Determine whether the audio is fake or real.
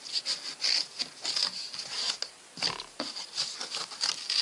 real